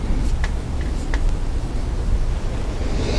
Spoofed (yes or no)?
no